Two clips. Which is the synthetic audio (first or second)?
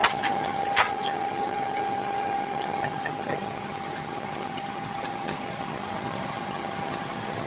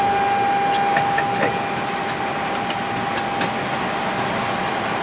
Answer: first